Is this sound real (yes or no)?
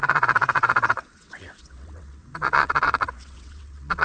no